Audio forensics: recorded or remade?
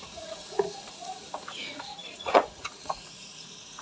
remade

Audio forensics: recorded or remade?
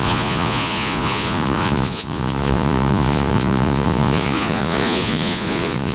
remade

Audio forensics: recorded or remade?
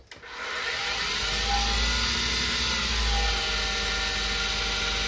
recorded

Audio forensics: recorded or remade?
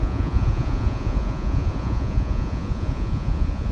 remade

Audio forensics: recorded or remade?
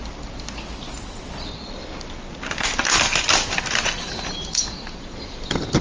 recorded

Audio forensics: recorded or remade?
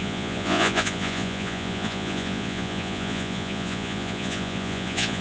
remade